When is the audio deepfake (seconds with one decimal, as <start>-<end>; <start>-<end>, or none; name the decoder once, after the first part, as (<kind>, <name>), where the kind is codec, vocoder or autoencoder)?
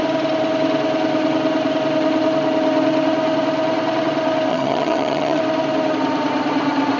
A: 4.5-5.4 (vocoder, HiFi-GAN)